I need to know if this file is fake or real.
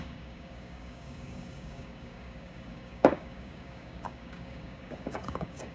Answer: fake